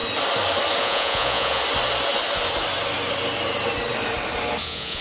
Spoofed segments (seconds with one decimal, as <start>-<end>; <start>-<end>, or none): 0.8-1.6; 4.6-5.0